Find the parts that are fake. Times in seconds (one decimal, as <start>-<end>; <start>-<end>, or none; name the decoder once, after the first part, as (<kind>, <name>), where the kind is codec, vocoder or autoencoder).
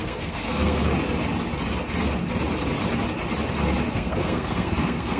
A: 0.0-0.8 (codec, SNAC); 3.9-5.2